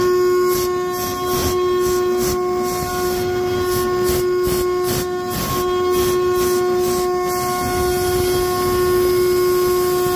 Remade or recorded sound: recorded